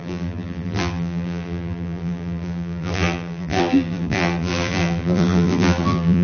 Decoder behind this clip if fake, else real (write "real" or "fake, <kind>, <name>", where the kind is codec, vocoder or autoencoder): fake, vocoder, BigVGAN v2